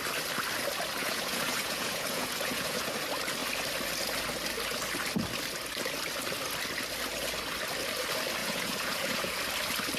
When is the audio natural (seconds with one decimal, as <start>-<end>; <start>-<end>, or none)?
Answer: 0.0-1.0; 2.9-8.4; 9.4-10.0